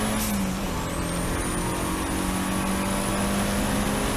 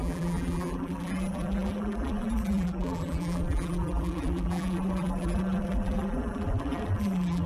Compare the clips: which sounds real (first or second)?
first